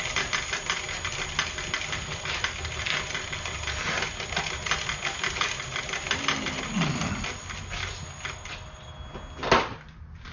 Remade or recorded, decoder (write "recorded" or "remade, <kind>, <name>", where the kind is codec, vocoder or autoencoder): recorded